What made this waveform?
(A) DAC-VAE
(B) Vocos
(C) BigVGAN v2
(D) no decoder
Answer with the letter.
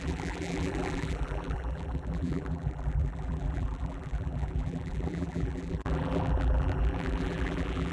C